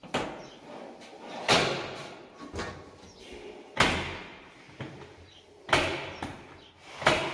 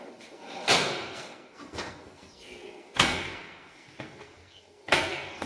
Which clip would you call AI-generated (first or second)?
second